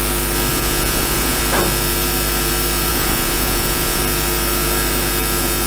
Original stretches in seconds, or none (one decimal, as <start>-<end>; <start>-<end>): 0.0-0.5; 1.4-2.9; 4.0-5.7